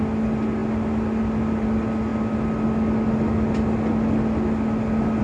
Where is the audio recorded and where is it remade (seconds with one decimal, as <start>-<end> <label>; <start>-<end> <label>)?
0.0-5.2 recorded